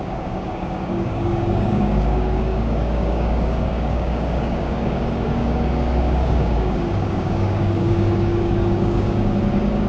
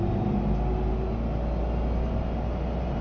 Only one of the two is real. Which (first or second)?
second